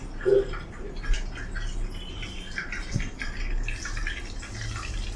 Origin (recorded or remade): recorded